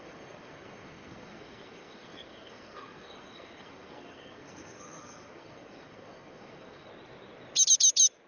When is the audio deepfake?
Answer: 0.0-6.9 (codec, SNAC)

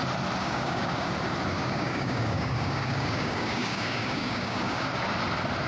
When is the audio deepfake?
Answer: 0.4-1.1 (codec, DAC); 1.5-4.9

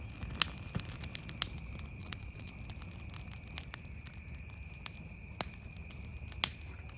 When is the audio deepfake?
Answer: 2.0-2.5 (vocoder, Vocos)

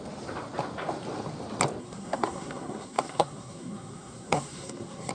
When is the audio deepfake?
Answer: 1.8-5.1 (codec, SNAC)

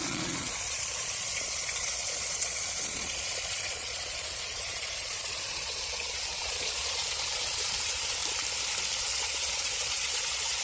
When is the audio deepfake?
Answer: 0.0-8.2 (vocoder, Vocos); 9.0-10.6